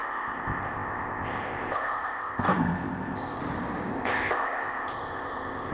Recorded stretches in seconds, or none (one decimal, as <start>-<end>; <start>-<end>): 3.4-3.9